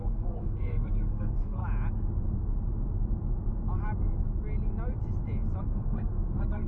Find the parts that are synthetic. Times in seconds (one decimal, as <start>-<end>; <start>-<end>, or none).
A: 0.0-1.6; 5.6-6.7